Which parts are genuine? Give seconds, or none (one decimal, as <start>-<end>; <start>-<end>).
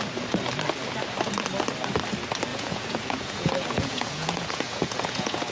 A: 0.0-2.5